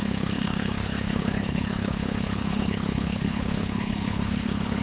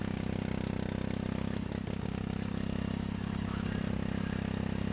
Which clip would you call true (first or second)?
second